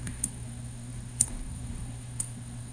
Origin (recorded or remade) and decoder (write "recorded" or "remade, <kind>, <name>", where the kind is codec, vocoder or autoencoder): remade, codec, SNAC